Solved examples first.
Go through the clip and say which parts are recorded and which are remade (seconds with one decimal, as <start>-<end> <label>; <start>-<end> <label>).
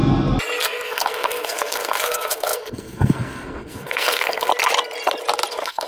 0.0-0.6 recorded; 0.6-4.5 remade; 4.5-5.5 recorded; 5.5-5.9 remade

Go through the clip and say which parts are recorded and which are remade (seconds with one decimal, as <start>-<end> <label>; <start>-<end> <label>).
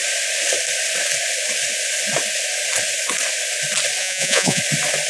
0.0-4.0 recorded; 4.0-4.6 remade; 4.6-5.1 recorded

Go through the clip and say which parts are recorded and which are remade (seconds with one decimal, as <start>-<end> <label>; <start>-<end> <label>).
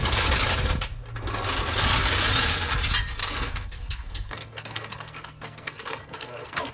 0.0-3.2 recorded; 3.2-6.7 remade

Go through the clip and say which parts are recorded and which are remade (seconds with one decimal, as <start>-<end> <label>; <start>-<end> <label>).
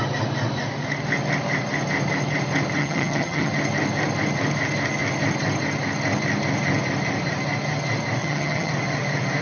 0.0-2.8 recorded; 2.8-3.5 remade; 3.5-8.2 recorded; 8.2-8.7 remade; 8.7-9.4 recorded